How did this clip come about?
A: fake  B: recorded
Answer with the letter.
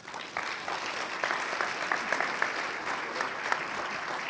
B